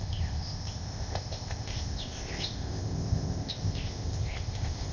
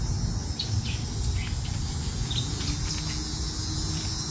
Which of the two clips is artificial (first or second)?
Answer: first